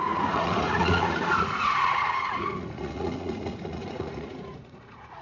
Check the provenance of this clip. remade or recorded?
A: remade